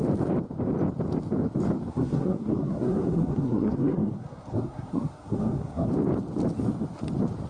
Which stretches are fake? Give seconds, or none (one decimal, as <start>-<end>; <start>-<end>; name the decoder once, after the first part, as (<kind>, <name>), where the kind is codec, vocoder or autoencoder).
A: 1.9-5.9 (codec, SNAC)